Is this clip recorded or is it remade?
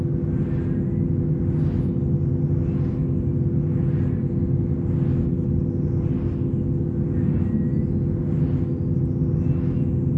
recorded